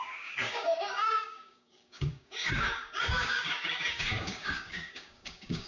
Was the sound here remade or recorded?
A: remade